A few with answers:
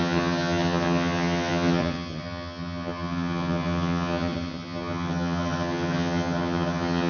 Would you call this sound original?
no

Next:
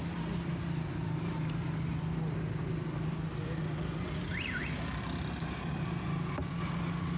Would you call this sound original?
yes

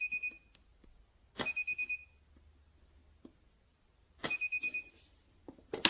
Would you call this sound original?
yes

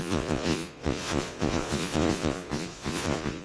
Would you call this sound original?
no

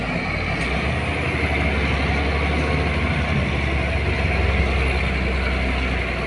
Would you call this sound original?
yes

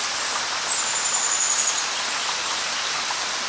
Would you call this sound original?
yes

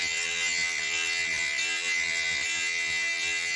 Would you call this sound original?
yes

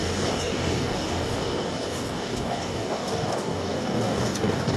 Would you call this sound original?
no